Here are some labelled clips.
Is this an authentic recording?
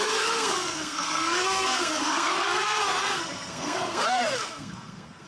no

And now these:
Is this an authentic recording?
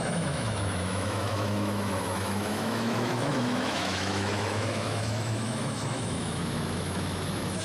no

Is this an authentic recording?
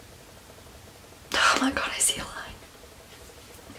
yes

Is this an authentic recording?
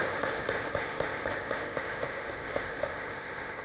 no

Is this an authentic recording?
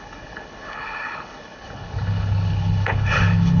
no